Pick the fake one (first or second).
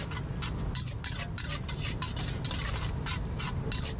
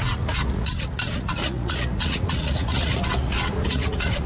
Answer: second